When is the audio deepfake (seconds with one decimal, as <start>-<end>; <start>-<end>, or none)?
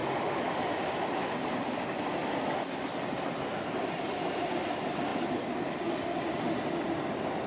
none